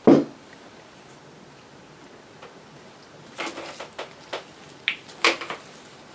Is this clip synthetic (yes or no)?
no